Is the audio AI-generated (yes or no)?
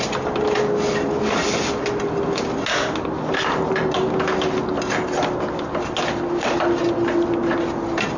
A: no